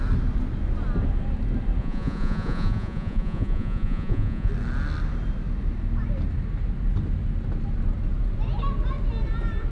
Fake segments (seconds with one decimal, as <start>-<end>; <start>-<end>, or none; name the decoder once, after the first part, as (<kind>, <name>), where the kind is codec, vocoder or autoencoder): 1.8-4.5 (vocoder, Vocos)